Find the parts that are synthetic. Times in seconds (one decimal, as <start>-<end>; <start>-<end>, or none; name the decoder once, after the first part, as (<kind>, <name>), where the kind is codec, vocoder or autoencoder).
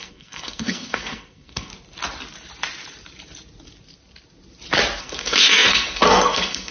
0.0-1.7 (codec, SNAC); 5.0-6.7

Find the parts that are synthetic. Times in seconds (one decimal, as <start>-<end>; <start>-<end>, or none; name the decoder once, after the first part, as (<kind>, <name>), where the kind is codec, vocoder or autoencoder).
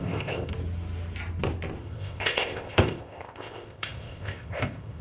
0.0-0.5 (codec, ZipCodec); 1.8-5.0